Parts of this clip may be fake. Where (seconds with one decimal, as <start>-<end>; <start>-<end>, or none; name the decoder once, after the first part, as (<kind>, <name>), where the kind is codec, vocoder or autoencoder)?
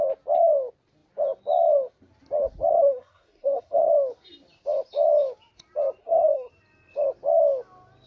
2.7-3.9 (codec, SNAC); 6.0-6.5